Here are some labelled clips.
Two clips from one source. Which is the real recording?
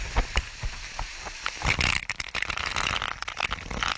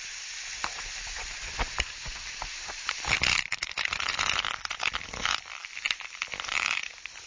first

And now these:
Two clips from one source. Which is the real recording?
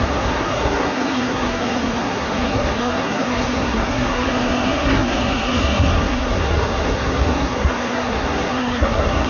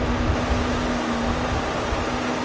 second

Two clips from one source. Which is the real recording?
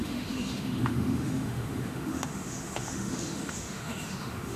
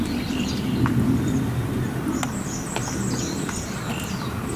second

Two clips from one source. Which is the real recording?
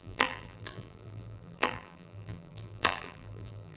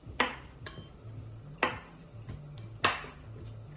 second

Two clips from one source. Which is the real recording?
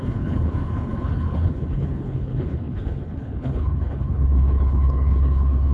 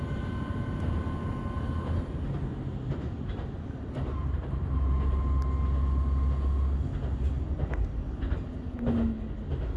second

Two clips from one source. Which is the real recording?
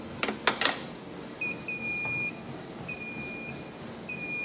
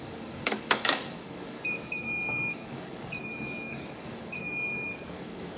first